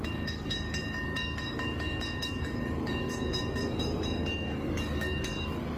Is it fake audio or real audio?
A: fake